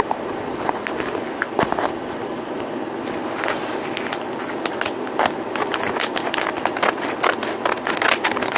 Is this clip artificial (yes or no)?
no